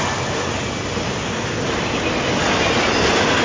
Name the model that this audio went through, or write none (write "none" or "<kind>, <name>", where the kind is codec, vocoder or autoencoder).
none